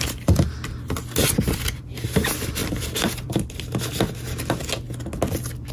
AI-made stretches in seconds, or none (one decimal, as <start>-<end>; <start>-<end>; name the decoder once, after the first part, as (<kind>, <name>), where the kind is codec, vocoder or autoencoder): 2.6-3.3 (vocoder, BigVGAN v2)